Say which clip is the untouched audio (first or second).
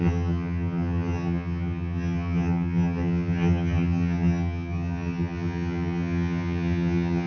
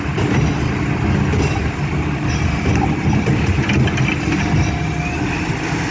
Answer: second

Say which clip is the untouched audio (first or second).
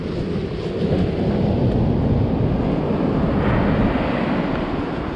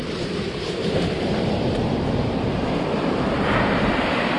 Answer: first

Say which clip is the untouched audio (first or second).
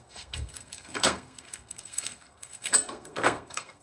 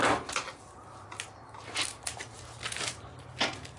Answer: second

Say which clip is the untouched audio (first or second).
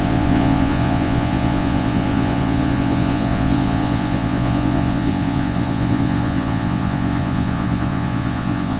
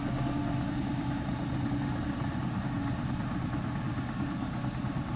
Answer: second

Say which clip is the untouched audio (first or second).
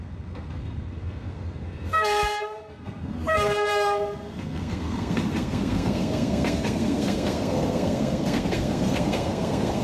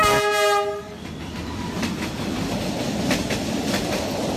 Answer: second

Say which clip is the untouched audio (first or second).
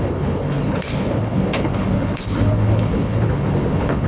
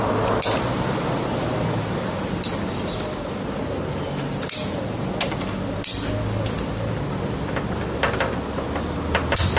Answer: second